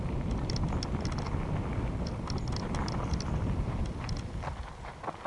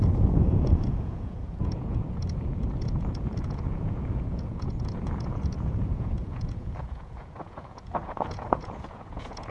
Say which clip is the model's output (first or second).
second